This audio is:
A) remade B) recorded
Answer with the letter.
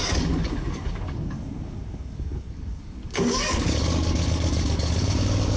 A